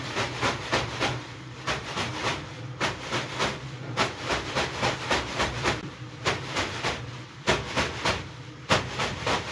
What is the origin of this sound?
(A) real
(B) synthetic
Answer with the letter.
B